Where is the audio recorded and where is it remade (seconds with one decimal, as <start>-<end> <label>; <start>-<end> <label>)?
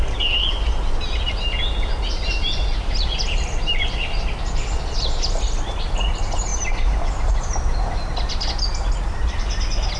0.0-10.0 recorded